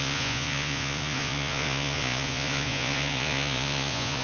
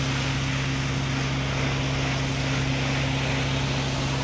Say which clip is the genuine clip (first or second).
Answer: second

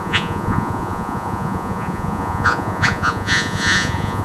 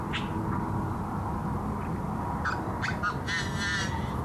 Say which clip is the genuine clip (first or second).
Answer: second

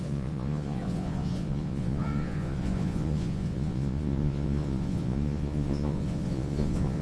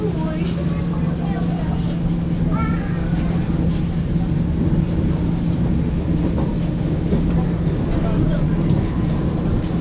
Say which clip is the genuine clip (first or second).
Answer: second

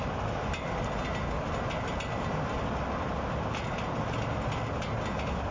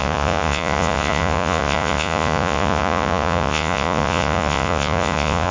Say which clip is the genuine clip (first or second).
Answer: first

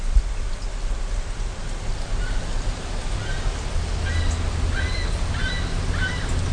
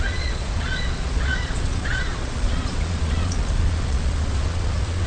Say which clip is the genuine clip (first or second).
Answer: first